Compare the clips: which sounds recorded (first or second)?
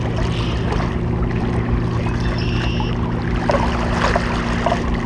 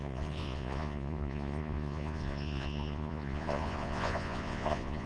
first